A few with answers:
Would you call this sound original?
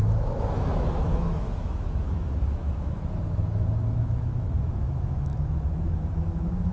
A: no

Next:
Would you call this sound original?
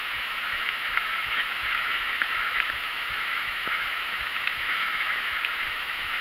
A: no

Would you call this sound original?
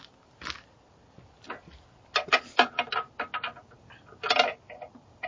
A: yes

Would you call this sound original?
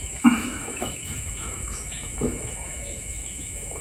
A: no